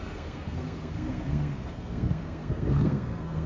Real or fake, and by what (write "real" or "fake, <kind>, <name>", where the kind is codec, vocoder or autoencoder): fake, codec, SNAC